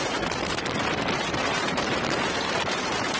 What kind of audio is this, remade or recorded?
remade